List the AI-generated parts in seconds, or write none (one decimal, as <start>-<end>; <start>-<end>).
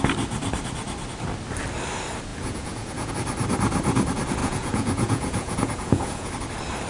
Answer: 2.3-3.1; 4.4-6.3